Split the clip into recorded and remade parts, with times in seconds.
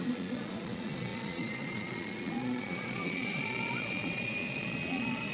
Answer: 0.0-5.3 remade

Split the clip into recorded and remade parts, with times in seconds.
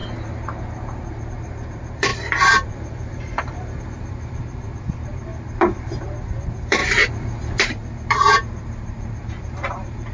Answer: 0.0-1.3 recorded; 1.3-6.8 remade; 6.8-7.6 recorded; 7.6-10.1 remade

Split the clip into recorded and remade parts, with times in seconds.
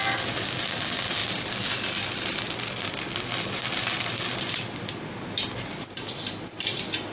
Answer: 0.0-7.1 recorded